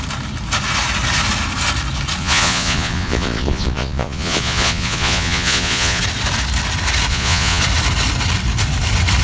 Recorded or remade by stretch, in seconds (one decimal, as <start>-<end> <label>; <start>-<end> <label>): 0.0-2.2 recorded; 2.2-6.0 remade; 6.0-7.1 recorded; 7.1-7.6 remade; 7.6-9.2 recorded